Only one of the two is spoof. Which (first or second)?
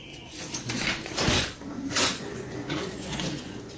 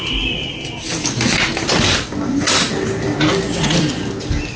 first